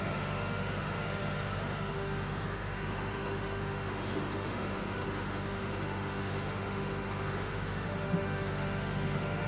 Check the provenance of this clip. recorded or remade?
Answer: remade